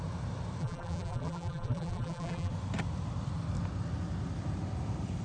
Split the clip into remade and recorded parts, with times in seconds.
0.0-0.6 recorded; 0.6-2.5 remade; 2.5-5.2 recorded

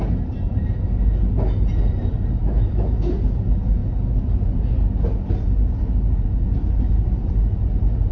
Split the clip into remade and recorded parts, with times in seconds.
0.0-2.4 recorded; 2.4-3.1 remade; 3.1-8.1 recorded